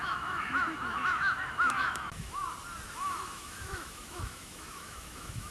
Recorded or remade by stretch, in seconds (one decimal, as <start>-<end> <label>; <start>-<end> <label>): 0.0-2.4 remade; 2.4-2.9 recorded; 2.9-5.5 remade